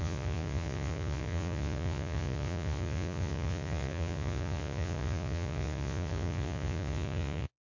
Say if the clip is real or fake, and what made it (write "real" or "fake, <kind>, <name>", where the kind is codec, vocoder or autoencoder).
fake, vocoder, Vocos